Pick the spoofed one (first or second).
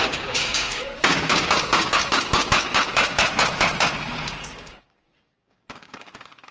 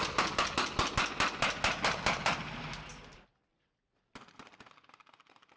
first